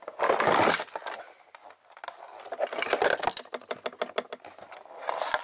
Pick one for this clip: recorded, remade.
recorded